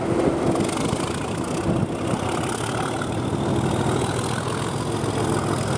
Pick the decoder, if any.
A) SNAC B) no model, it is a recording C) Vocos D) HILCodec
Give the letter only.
B